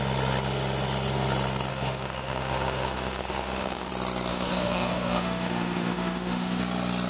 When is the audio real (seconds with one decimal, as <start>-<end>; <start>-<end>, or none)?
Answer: 0.0-1.7; 3.9-4.3; 6.6-7.1